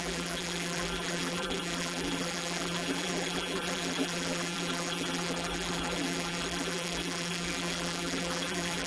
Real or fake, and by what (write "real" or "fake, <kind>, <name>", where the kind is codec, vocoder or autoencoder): fake, vocoder, BigVGAN v2